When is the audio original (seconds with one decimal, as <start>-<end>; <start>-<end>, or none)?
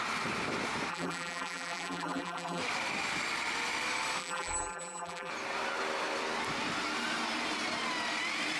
0.0-0.9; 2.6-4.2; 5.3-8.6